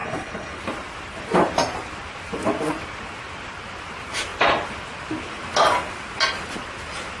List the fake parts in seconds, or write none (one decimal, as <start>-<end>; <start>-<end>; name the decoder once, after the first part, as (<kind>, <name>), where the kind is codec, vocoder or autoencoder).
0.0-0.6 (codec, HILCodec)